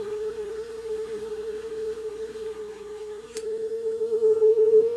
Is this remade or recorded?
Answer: remade